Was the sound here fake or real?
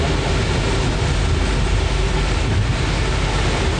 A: real